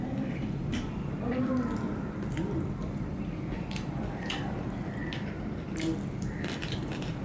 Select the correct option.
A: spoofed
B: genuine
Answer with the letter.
A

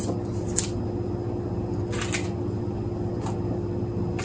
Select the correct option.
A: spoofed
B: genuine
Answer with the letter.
B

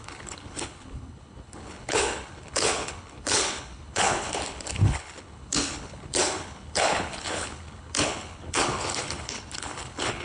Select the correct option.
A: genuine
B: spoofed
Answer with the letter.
B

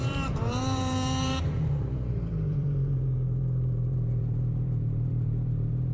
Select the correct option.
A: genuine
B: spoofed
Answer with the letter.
B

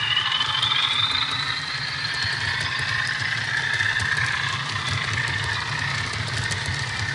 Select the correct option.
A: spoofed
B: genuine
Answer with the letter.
B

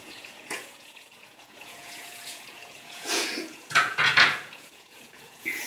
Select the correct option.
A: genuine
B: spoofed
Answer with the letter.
B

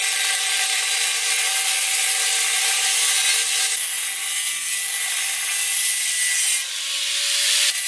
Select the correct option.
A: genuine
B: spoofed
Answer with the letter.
A